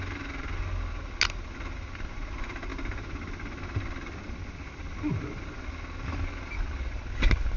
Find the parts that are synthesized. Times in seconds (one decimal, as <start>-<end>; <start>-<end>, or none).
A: none

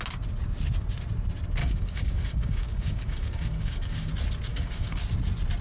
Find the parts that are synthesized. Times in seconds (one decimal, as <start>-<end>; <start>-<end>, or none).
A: 1.6-4.1; 4.5-5.0